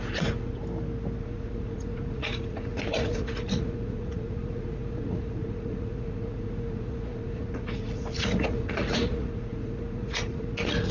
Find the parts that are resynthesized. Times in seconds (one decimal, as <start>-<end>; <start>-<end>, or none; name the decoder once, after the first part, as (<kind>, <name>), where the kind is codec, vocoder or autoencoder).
0.0-0.6 (vocoder, Vocos); 1.2-10.9